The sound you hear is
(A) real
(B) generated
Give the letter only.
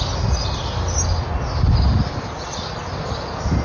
A